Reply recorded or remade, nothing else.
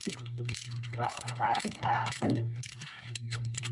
remade